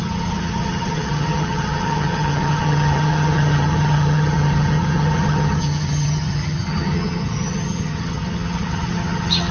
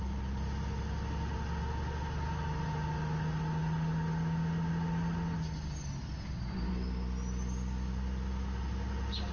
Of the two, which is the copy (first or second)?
first